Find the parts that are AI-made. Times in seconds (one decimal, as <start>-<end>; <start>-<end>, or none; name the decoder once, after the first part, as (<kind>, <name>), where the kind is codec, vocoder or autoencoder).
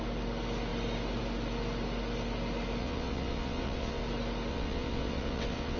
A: 2.8-4.0 (vocoder, WaveNeXt); 4.5-5.8